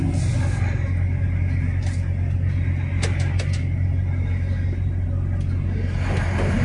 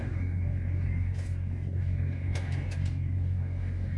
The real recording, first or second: first